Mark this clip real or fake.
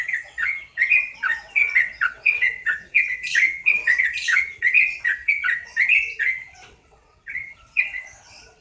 fake